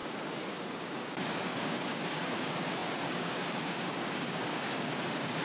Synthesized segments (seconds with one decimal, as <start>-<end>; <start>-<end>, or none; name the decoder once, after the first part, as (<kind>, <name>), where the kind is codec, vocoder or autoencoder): 0.0-5.4 (codec, DAC)